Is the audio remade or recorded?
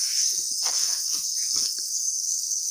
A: remade